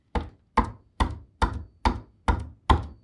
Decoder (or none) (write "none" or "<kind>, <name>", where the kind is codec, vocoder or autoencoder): none